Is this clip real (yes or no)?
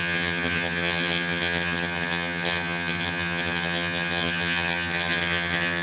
no